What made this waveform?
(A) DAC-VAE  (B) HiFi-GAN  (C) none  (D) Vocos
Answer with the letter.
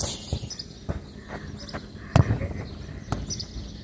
C